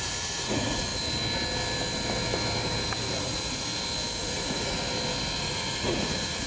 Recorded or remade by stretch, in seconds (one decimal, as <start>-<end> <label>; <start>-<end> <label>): 0.0-0.9 remade; 0.9-3.2 recorded; 3.2-3.7 remade; 3.7-4.2 recorded; 4.2-4.8 remade; 4.8-5.4 recorded; 5.4-6.5 remade

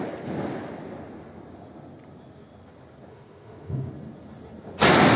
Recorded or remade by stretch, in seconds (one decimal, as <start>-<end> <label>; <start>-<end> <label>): 0.0-3.1 recorded; 3.1-3.9 remade; 3.9-5.2 recorded

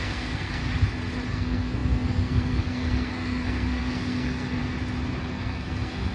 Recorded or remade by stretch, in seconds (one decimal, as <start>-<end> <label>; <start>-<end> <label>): 0.0-0.6 remade; 0.6-1.3 recorded; 1.3-4.6 remade; 4.6-5.2 recorded; 5.2-6.1 remade

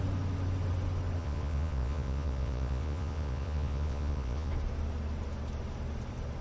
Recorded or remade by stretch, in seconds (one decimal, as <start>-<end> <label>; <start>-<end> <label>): 0.0-1.2 recorded; 1.2-4.5 remade; 4.5-6.4 recorded

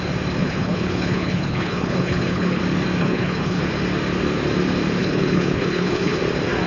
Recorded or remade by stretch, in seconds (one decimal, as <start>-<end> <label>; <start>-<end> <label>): 0.0-0.4 recorded; 0.4-2.6 remade; 2.6-3.0 recorded; 3.0-3.6 remade; 3.6-5.0 recorded; 5.0-6.2 remade; 6.2-6.7 recorded

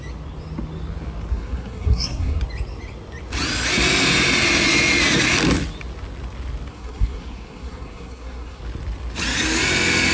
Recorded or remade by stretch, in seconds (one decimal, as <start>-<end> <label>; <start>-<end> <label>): 0.0-1.3 recorded; 1.3-2.4 remade; 2.4-6.7 recorded; 6.7-8.6 remade; 8.6-10.1 recorded

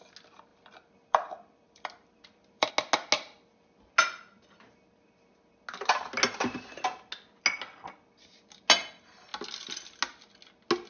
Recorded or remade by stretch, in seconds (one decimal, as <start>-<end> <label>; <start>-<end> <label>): 0.0-0.5 recorded; 0.5-2.7 remade; 2.7-10.9 recorded